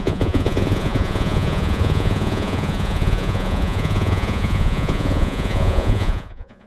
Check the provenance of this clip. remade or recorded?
remade